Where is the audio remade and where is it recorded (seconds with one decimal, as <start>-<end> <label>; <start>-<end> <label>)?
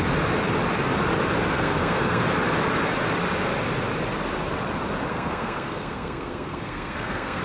0.0-1.5 recorded; 1.5-2.2 remade; 2.2-5.1 recorded; 5.1-7.4 remade